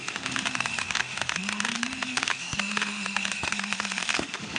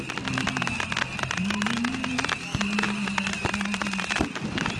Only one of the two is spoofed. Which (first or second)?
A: first